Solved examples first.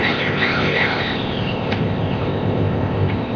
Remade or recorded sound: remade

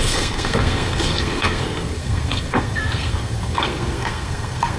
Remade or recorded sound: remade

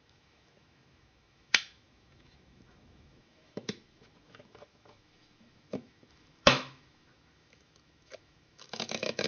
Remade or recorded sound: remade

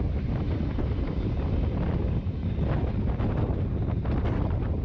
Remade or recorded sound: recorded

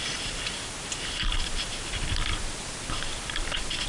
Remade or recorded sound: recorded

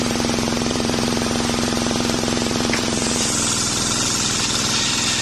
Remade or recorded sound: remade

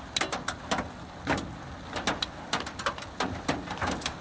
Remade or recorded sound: remade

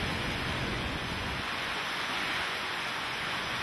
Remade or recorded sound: remade